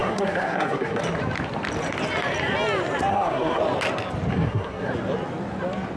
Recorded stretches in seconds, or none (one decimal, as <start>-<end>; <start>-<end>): 1.0-3.1; 3.6-4.3; 4.9-6.0